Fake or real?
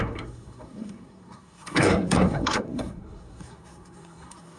fake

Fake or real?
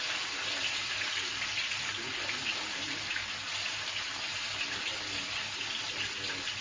real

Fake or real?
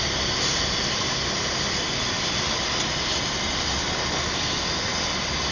real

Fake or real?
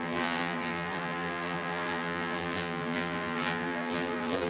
fake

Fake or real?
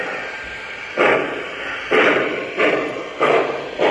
fake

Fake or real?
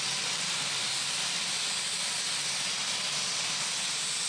fake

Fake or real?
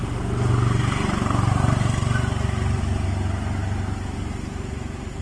real